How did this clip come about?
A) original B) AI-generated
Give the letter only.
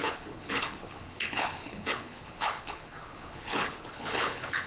B